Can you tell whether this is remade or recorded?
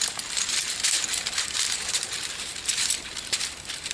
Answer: remade